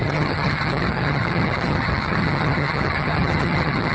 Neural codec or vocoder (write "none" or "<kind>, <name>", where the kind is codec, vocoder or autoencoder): vocoder, HiFi-GAN